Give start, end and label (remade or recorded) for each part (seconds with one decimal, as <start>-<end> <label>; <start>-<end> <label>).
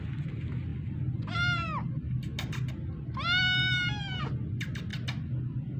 0.0-5.8 recorded